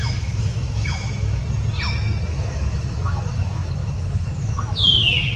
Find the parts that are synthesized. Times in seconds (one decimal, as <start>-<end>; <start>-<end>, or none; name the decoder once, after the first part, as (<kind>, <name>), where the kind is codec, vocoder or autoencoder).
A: 0.0-1.4 (autoencoder, DAC-VAE); 2.3-5.4